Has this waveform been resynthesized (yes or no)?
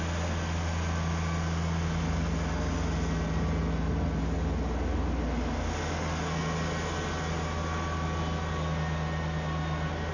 no